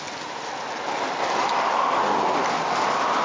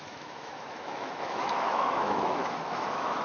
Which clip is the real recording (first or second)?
first